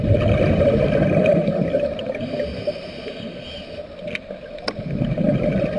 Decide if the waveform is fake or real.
real